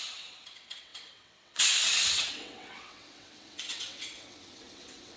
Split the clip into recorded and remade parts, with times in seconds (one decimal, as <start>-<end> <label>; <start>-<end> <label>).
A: 0.0-5.2 remade